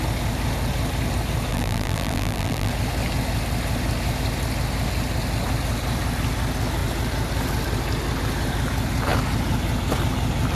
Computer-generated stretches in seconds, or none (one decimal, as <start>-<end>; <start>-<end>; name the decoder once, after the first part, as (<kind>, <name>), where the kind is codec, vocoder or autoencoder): 1.5-2.7 (vocoder, BigVGAN v2)

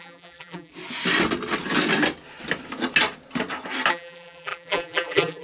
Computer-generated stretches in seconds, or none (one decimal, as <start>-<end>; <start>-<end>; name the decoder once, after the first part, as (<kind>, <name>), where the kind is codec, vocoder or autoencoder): 0.0-0.7 (vocoder, BigVGAN v2); 3.9-5.4

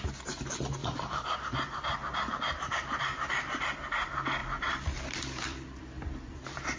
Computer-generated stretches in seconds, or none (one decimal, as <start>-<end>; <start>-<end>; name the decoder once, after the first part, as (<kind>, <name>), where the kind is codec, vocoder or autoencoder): 0.8-3.0 (vocoder, BigVGAN v2); 4.4-5.8

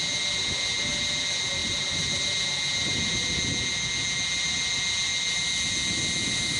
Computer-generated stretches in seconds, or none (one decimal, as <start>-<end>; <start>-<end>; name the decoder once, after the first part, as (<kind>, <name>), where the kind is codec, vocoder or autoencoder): none

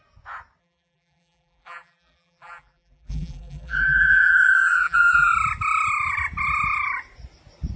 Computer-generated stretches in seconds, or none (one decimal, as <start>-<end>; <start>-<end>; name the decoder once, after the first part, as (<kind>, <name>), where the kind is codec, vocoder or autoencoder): 0.6-5.3 (vocoder, BigVGAN v2)